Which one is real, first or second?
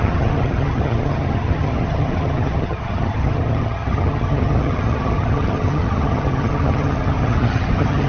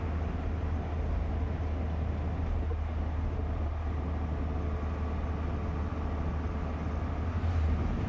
second